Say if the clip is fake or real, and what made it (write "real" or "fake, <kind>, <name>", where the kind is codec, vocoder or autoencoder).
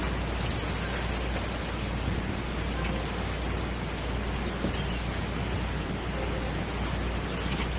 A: real